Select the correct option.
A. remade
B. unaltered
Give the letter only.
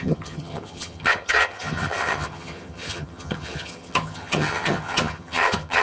A